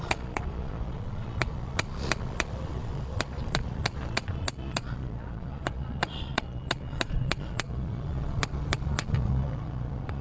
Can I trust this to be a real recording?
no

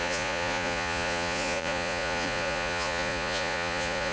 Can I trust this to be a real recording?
no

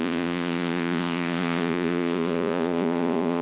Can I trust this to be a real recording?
no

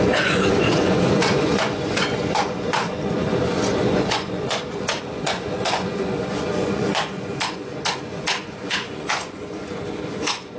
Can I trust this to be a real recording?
no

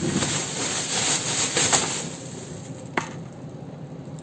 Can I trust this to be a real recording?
yes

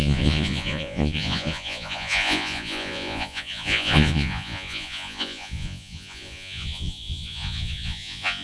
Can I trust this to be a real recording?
no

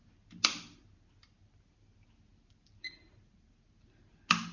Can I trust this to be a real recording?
yes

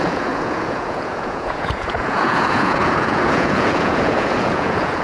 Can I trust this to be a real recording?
no